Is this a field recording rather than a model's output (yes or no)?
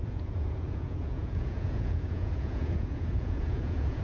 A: no